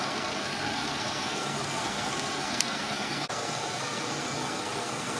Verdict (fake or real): fake